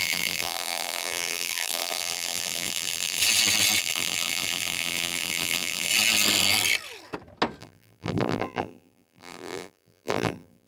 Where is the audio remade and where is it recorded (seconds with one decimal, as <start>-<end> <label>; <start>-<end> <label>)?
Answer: 0.0-3.2 remade; 3.2-3.8 recorded; 3.8-5.9 remade; 5.9-7.6 recorded; 7.6-10.7 remade